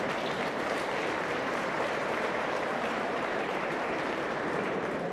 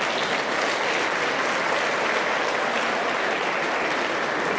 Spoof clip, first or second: first